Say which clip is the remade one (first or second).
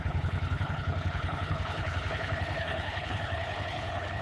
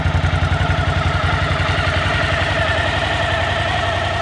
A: first